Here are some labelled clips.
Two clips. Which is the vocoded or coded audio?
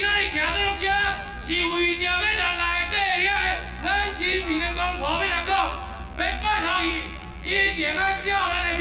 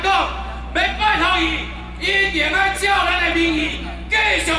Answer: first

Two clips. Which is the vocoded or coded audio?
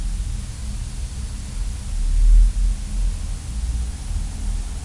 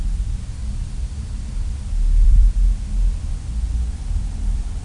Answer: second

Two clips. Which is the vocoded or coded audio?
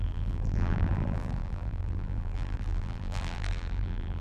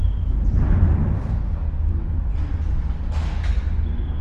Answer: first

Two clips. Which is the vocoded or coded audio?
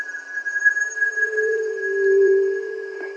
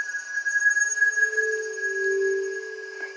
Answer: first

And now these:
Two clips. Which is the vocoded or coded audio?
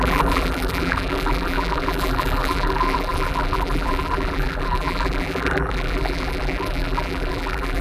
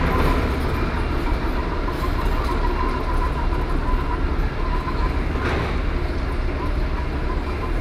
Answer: first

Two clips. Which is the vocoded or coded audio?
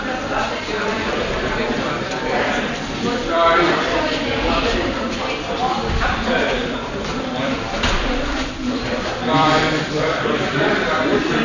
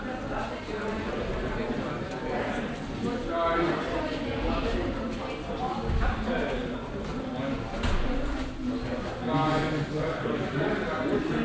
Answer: first